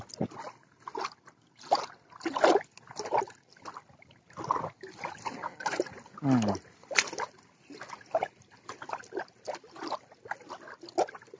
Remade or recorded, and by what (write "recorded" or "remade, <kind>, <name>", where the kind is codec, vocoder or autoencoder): recorded